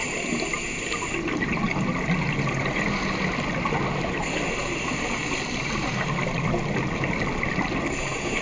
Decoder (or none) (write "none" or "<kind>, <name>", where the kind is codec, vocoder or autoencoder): none